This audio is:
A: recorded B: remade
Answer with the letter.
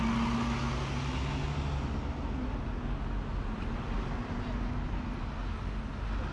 A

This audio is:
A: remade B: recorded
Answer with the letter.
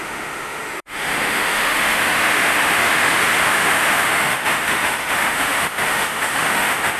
A